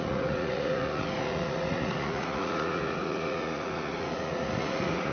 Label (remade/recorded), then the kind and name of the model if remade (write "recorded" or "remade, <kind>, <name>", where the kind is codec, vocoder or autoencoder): remade, vocoder, Vocos